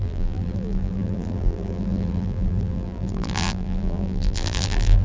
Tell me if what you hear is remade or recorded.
remade